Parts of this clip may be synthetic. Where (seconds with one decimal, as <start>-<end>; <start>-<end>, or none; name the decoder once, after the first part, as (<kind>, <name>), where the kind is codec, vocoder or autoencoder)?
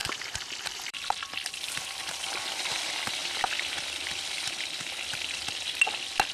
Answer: 0.0-2.4 (vocoder, BigVGAN v2); 3.2-5.8